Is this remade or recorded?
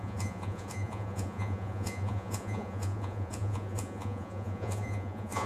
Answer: remade